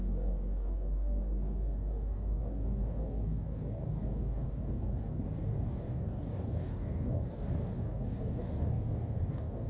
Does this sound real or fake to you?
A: fake